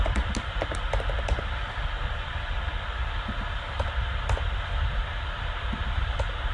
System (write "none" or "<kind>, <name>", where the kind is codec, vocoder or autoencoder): none